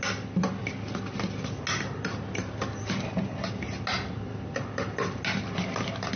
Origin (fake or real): real